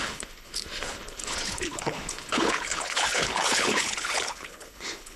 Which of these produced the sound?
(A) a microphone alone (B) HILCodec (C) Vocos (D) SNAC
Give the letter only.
B